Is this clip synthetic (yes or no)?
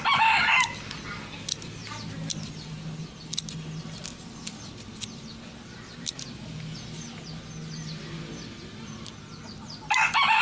no